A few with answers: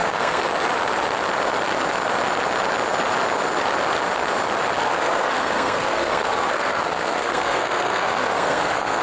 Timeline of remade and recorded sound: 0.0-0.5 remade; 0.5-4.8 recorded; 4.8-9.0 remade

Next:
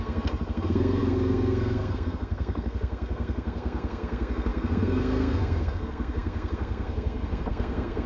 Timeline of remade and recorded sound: 0.0-8.1 remade

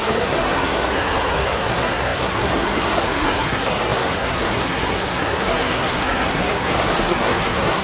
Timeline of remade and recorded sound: 0.0-7.8 remade

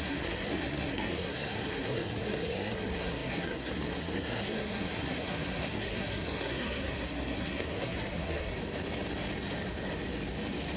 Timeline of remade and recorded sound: 0.0-8.5 remade; 8.5-10.8 recorded